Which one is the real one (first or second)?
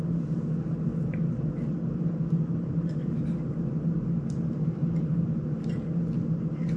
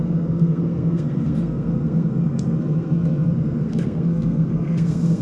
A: first